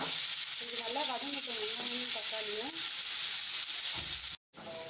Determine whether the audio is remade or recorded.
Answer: recorded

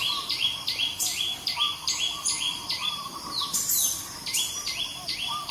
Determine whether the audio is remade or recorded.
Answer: remade